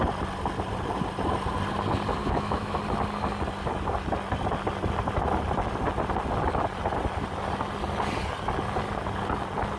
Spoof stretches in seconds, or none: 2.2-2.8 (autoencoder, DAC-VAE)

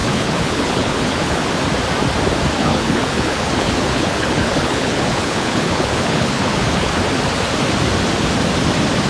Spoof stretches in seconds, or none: 0.0-1.5 (codec, HILCodec); 2.6-6.9

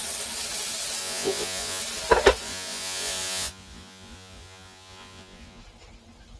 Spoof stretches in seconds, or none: 1.0-1.8 (vocoder, Vocos); 2.4-5.6